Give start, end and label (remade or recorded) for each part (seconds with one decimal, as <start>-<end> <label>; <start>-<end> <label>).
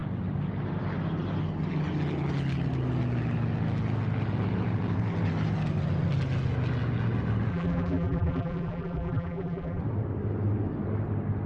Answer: 0.0-7.5 recorded; 7.5-9.8 remade; 9.8-11.5 recorded